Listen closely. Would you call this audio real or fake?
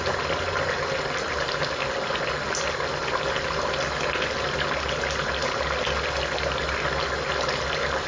real